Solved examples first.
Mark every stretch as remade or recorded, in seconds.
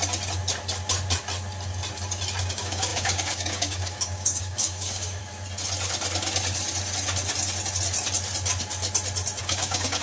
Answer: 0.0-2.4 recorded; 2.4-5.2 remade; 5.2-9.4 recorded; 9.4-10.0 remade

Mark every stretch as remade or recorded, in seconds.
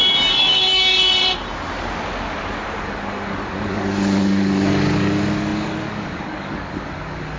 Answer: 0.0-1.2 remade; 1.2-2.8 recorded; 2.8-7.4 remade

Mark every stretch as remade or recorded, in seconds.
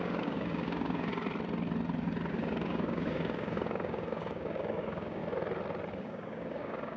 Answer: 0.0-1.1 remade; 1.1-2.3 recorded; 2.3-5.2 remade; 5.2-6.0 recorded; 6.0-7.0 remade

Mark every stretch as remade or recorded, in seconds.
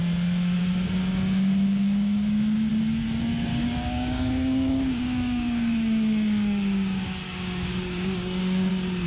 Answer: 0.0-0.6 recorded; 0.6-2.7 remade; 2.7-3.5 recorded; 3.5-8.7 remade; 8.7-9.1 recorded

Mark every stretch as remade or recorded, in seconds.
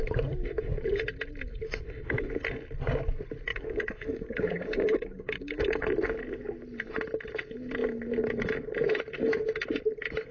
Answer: 0.0-3.5 recorded; 3.5-5.8 remade; 5.8-10.3 recorded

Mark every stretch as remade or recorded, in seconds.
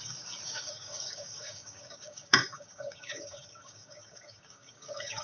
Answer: 0.0-5.2 remade